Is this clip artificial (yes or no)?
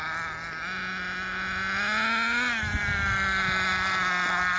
no